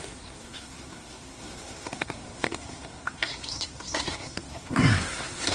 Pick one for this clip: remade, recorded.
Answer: remade